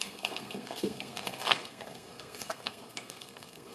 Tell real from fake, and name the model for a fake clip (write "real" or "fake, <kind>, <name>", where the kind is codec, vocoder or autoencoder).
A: fake, codec, SNAC